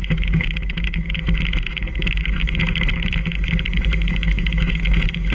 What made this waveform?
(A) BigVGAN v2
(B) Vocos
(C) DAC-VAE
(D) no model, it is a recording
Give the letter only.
C